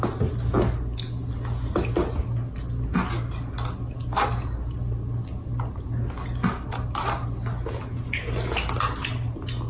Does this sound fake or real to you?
real